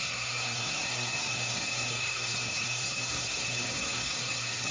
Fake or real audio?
fake